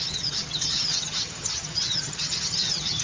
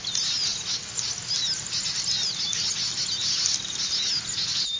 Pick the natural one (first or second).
second